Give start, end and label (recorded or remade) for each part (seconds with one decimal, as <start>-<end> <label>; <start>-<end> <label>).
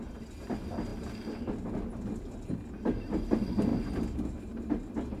0.0-5.2 recorded